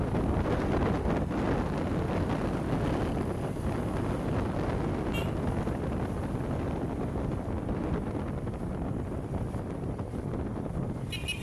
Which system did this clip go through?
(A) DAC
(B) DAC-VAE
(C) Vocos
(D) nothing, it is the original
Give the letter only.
D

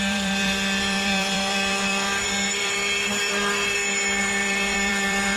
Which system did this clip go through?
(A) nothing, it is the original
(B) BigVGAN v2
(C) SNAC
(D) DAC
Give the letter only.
B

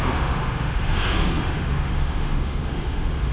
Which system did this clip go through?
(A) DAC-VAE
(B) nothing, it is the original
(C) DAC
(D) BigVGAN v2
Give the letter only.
A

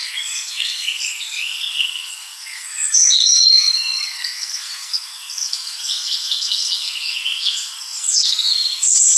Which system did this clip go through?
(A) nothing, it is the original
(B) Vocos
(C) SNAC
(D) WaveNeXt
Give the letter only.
C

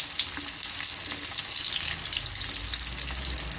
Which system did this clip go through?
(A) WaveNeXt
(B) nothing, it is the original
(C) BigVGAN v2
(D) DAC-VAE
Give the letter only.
B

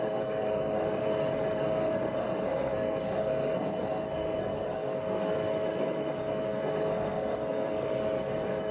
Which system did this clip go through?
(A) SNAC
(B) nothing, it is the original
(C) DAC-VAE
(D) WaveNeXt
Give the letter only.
A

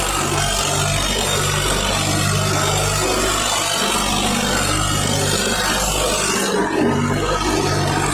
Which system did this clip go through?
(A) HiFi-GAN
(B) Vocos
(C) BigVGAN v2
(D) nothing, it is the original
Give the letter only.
D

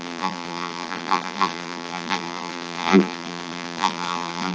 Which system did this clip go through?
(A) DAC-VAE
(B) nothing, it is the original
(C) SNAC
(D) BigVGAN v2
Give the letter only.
D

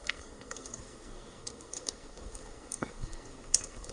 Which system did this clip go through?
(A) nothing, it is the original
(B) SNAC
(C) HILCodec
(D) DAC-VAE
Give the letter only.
B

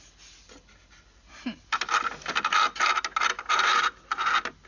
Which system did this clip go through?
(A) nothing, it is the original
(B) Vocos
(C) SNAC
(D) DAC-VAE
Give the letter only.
A